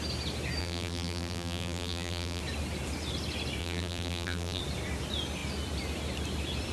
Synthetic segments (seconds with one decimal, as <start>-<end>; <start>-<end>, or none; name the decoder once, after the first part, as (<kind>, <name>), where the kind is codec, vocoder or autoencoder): 0.6-2.4 (vocoder, BigVGAN v2); 3.6-4.6